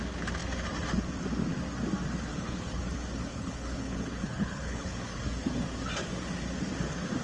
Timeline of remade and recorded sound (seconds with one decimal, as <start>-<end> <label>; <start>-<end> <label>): 0.0-2.3 recorded; 2.3-2.8 remade; 2.8-3.3 recorded; 3.3-5.2 remade; 5.2-7.2 recorded